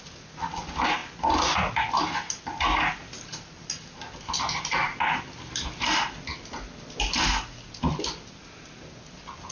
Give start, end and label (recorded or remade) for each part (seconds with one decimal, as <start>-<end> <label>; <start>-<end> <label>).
0.0-9.5 recorded

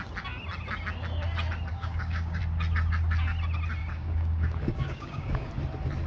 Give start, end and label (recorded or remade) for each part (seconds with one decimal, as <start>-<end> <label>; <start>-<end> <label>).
0.0-1.7 recorded; 1.7-2.4 remade; 2.4-3.8 recorded; 3.8-5.5 remade; 5.5-6.1 recorded

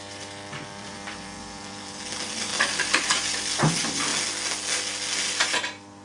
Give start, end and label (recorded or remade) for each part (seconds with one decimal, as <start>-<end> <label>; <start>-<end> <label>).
0.0-4.1 remade; 4.1-5.2 recorded; 5.2-6.0 remade

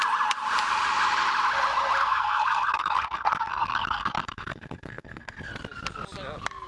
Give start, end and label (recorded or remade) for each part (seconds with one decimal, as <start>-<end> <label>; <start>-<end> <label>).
0.0-2.0 recorded; 2.0-5.5 remade; 5.5-6.7 recorded

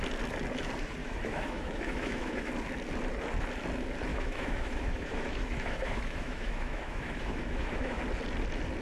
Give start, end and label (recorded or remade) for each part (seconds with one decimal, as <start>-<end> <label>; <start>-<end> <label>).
0.0-1.0 recorded; 1.0-2.5 remade; 2.5-4.1 recorded; 4.1-8.0 remade; 8.0-8.8 recorded

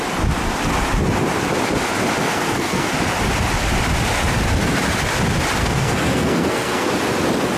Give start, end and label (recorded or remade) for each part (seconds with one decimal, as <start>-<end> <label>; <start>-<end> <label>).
0.0-2.2 recorded; 2.2-2.9 remade; 2.9-5.6 recorded; 5.6-6.9 remade; 6.9-7.6 recorded